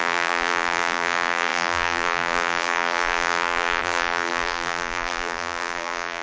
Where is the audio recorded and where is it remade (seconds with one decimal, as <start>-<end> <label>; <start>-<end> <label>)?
0.0-6.2 remade